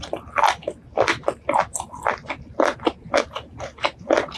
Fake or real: real